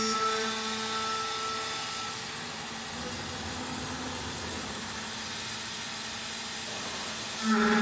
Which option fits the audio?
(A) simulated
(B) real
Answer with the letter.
B